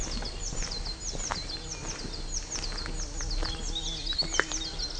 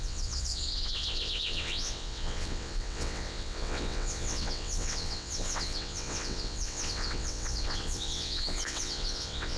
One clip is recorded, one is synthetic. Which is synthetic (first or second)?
second